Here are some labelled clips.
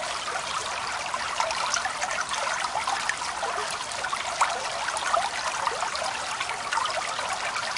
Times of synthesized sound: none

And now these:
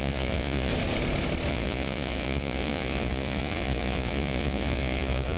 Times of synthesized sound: 0.0-0.7 (vocoder, Vocos); 1.5-5.4

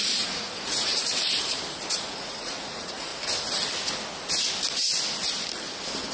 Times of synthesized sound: 0.0-0.9 (vocoder, Vocos); 1.9-3.1

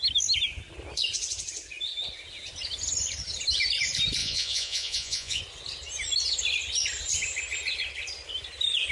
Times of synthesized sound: 4.2-5.4 (vocoder, Vocos)

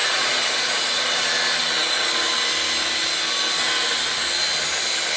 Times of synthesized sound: 0.0-1.0 (vocoder, Vocos)